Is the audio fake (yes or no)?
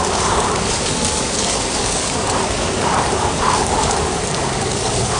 yes